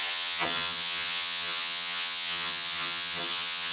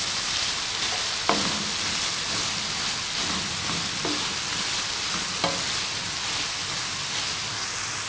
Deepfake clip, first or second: first